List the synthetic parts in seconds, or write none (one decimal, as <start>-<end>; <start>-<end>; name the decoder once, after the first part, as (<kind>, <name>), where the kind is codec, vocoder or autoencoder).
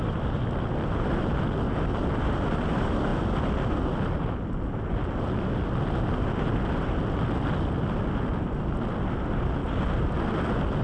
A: none